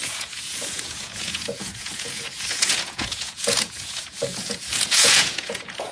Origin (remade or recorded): remade